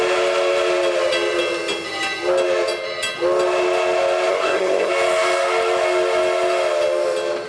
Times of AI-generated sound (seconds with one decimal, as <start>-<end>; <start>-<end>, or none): 4.3-4.9